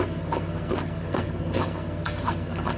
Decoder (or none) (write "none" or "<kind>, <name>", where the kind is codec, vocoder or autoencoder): codec, SNAC